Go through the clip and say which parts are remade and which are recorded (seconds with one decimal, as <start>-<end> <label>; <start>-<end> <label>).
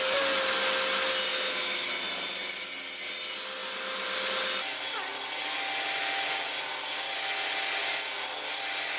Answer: 0.0-1.3 recorded; 1.3-1.9 remade; 1.9-9.0 recorded